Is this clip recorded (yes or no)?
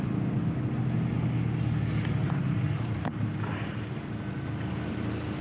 yes